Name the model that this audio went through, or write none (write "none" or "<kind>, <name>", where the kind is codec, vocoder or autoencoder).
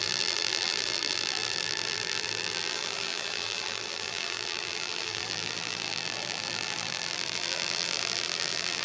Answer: vocoder, BigVGAN v2